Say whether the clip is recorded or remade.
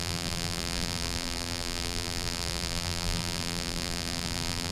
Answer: remade